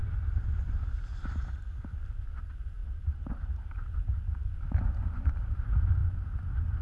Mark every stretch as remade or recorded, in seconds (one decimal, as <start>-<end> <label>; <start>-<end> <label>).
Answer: 0.0-2.8 recorded; 2.8-3.6 remade; 3.6-6.8 recorded